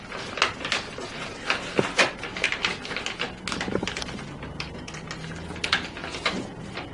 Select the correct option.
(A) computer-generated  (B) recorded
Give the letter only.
B